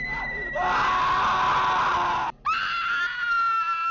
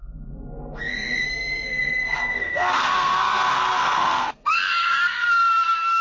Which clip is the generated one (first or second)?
second